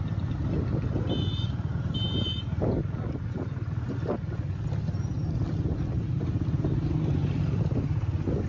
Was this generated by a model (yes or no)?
no